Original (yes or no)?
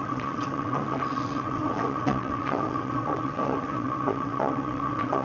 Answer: no